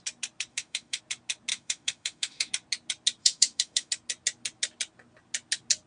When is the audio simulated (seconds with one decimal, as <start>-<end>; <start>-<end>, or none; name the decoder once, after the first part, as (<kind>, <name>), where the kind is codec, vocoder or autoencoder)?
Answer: 0.5-1.0 (autoencoder, DAC-VAE); 1.5-2.5; 3.2-3.9